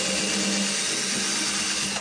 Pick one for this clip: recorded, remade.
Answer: recorded